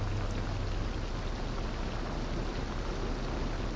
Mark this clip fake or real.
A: real